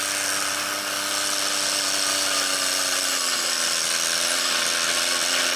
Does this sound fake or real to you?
real